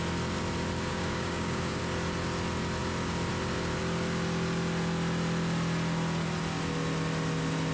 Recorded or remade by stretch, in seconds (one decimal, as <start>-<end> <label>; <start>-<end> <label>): 0.0-0.9 recorded; 0.9-1.8 remade; 1.8-7.7 recorded